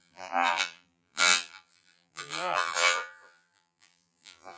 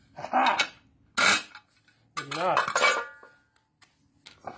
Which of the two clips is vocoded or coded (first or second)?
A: first